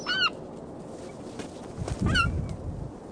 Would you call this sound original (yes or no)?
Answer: yes